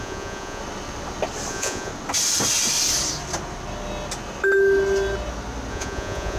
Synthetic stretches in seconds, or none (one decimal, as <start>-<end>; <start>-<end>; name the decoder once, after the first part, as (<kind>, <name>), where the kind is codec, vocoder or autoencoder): 0.0-0.6 (vocoder, Vocos); 1.5-1.9; 5.7-6.4